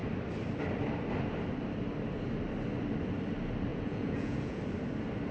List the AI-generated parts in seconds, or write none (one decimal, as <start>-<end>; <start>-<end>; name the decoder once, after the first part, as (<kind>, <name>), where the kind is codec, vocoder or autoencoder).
3.7-4.6 (vocoder, Vocos)

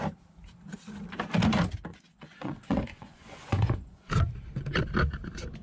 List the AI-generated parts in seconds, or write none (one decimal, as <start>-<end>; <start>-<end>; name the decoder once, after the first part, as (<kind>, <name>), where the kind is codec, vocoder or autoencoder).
1.9-4.1 (vocoder, Vocos)

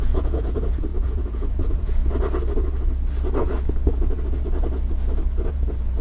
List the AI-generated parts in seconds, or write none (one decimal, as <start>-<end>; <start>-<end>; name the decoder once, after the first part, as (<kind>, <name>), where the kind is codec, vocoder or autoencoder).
0.0-2.0 (vocoder, Vocos); 5.5-6.0

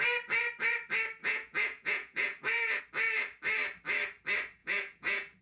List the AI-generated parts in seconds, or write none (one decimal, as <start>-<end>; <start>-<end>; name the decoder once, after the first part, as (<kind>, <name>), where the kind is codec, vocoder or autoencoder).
1.2-2.8 (vocoder, Vocos); 4.6-5.4